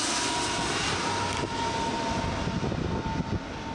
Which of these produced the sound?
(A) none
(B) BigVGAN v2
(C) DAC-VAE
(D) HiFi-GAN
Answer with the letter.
A